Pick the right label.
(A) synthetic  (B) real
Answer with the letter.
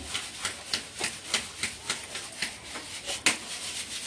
B